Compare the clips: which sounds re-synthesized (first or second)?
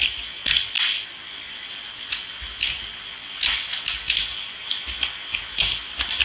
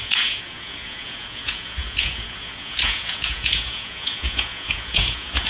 second